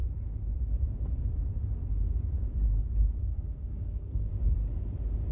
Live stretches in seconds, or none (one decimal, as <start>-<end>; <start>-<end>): 0.0-3.3; 4.3-5.3